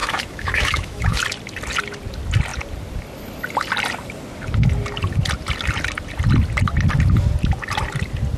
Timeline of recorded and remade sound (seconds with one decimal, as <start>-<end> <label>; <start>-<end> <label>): 0.0-1.2 remade; 1.2-8.4 recorded